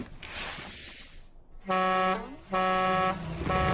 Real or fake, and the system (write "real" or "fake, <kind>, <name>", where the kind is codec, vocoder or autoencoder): real